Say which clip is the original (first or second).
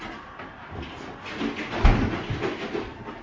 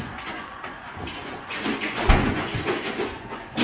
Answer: first